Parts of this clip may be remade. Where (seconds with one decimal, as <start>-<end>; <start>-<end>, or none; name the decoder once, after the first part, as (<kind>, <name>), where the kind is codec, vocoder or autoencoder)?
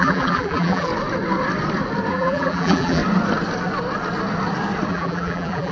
0.0-0.9 (vocoder, BigVGAN v2); 2.1-3.0; 4.9-5.7